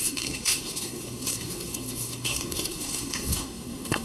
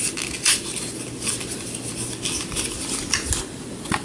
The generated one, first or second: first